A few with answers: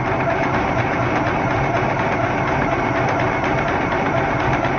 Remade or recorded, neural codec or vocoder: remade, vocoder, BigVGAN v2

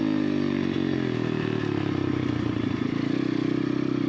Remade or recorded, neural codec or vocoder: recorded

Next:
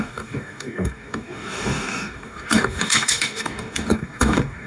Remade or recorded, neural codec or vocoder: remade, codec, DAC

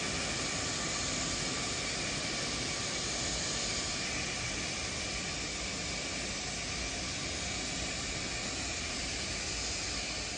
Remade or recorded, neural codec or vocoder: recorded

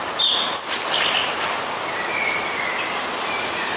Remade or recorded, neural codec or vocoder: recorded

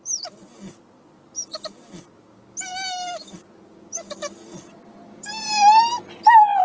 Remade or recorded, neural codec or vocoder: recorded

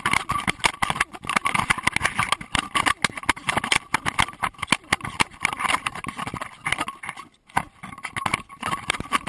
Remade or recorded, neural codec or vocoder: recorded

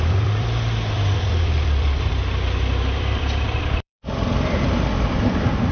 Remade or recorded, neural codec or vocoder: remade, vocoder, BigVGAN v2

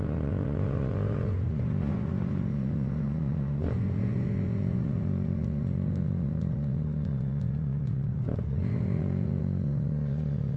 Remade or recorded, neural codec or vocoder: remade, vocoder, Vocos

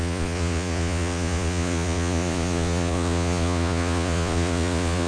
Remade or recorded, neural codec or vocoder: remade, vocoder, Vocos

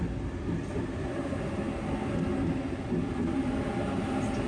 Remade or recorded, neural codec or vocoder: recorded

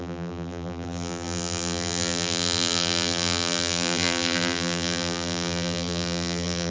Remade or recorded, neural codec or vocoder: remade, vocoder, BigVGAN v2